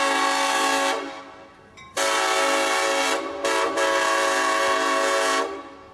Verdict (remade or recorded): recorded